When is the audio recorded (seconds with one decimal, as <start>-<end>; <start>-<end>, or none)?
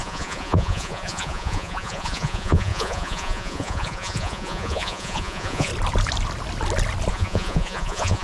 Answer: 5.7-7.1